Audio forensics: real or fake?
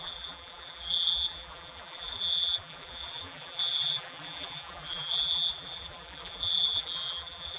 fake